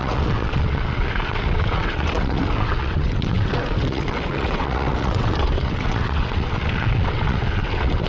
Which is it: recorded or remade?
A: remade